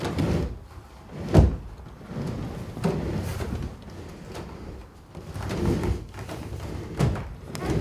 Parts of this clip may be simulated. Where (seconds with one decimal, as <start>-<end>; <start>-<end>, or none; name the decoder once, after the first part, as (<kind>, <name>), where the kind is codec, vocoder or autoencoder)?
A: none